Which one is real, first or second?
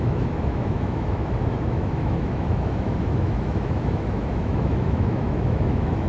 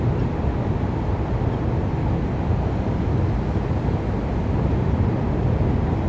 second